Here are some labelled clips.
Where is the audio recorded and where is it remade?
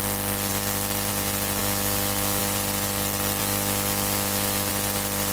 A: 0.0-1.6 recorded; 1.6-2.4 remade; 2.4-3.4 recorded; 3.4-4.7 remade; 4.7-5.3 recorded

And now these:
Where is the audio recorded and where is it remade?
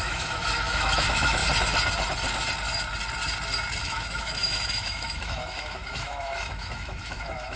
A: 0.0-1.4 remade; 1.4-3.8 recorded; 3.8-7.6 remade